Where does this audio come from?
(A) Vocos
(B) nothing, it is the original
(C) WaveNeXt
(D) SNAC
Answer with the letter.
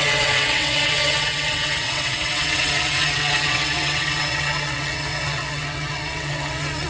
C